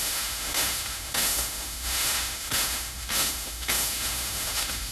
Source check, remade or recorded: remade